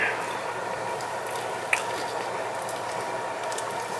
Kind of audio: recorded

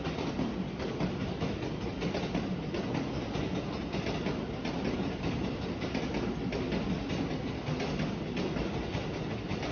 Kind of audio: recorded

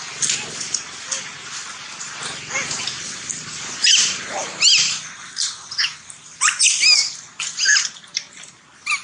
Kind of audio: recorded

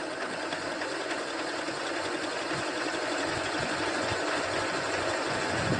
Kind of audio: remade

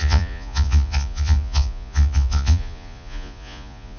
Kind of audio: remade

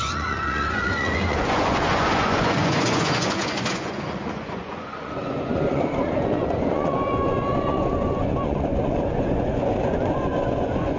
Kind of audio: remade